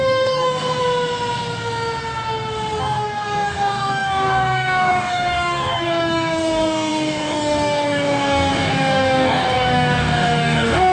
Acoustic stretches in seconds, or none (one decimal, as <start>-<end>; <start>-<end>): 0.8-2.8